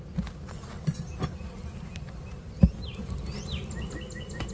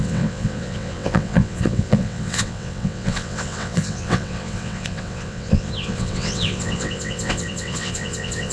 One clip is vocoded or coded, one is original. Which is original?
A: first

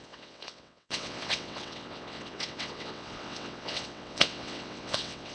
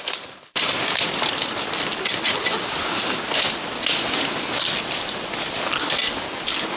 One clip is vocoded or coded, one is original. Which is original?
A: second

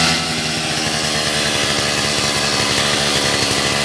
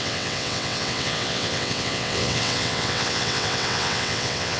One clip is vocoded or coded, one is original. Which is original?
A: first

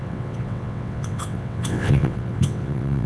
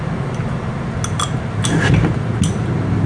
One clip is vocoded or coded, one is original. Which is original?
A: second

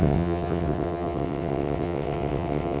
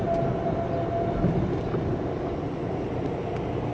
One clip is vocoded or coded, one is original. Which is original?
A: second